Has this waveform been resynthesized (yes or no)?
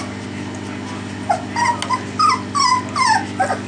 no